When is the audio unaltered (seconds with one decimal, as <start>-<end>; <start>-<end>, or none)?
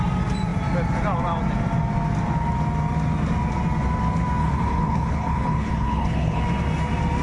0.0-4.4; 6.4-7.2